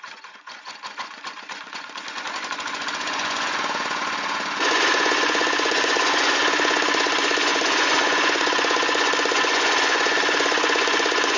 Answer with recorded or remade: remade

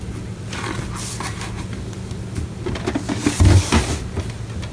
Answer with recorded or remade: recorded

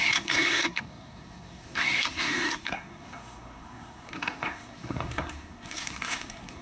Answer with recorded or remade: remade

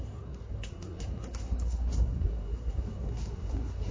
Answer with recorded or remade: remade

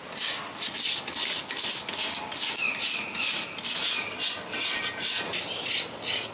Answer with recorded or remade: recorded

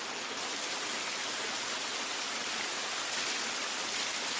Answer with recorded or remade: recorded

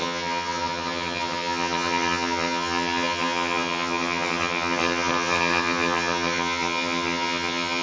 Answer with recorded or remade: remade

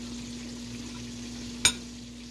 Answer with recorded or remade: recorded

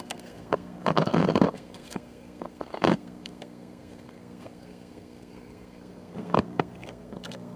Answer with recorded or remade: remade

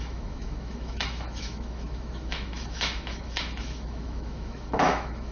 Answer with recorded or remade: remade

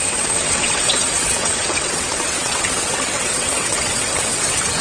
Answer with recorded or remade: remade